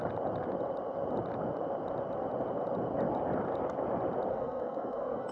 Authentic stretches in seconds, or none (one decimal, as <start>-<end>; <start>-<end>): 0.0-4.3